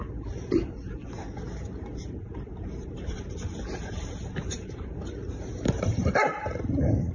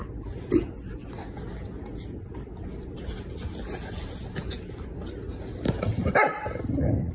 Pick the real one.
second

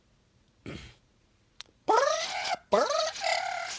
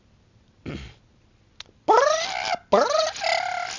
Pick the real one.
second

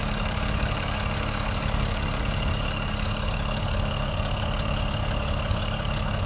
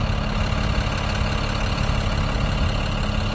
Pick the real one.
second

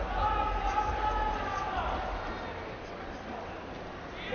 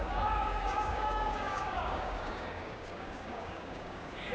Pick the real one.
first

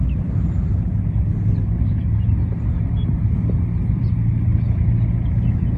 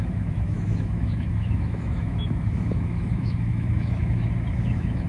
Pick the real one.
first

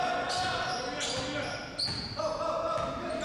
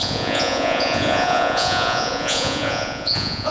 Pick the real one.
first